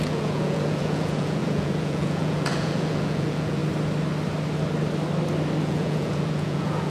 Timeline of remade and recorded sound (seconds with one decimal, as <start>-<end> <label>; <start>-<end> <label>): 0.0-3.6 remade; 3.6-5.6 recorded; 5.6-6.9 remade